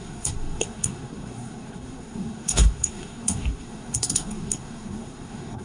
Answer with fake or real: fake